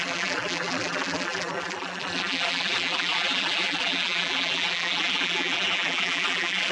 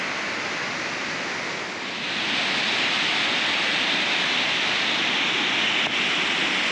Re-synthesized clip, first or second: first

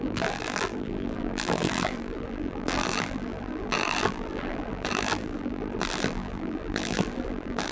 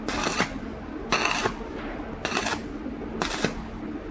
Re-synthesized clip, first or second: first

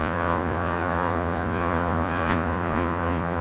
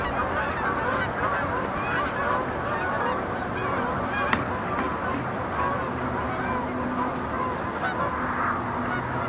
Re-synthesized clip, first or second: first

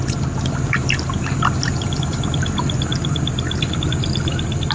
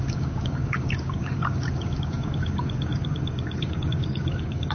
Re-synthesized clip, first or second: second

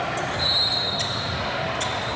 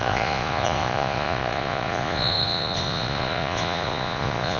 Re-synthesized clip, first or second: second